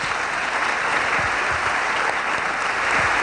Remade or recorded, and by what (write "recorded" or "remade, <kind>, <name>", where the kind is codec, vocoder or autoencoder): recorded